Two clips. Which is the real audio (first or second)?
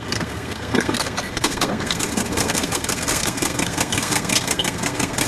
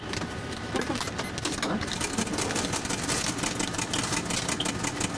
second